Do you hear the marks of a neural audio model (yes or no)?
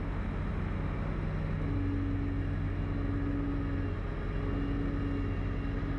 no